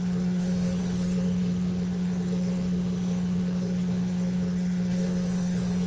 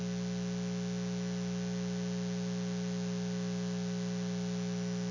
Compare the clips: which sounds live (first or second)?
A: second